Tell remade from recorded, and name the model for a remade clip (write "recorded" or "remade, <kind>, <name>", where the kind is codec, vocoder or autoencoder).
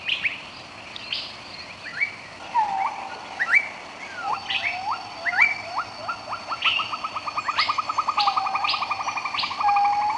recorded